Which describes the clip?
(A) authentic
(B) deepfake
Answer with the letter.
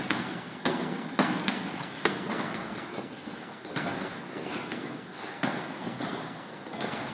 B